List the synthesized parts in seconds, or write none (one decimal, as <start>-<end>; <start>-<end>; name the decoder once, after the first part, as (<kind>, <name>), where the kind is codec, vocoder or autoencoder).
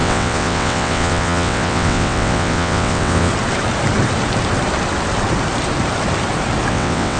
0.0-3.3 (vocoder, WaveNeXt); 6.7-7.2